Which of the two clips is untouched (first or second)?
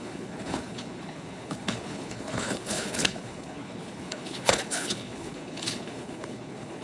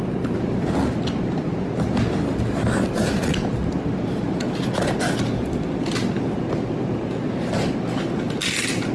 second